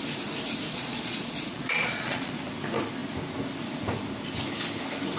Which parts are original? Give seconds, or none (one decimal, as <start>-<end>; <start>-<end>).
0.0-0.7; 2.3-5.2